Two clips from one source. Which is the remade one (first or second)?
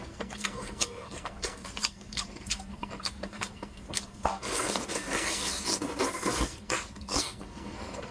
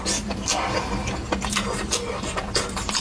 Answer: first